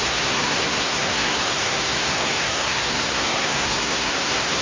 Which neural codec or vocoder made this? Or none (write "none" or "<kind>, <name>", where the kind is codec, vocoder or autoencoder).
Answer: codec, SNAC